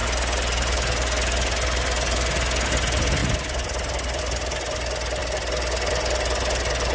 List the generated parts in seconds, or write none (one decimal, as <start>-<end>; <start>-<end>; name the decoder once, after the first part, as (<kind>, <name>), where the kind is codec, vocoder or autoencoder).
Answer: 3.2-4.2 (vocoder, BigVGAN v2)